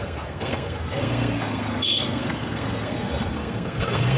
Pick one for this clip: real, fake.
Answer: fake